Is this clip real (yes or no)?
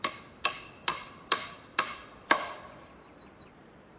no